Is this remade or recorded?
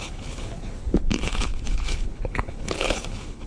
remade